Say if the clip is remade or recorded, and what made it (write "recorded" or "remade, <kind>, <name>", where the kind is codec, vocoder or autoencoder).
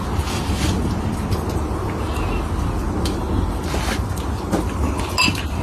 recorded